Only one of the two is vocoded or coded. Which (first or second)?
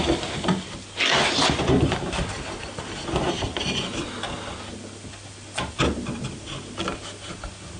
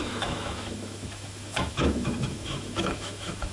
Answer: second